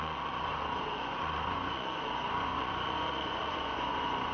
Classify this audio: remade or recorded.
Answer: remade